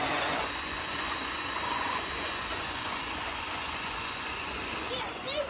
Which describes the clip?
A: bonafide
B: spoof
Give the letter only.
B